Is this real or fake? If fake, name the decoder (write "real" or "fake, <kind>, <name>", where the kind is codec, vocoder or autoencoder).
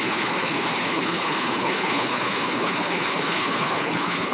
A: fake, codec, HILCodec